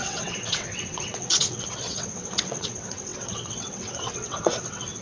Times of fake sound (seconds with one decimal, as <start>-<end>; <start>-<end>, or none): 0.0-5.0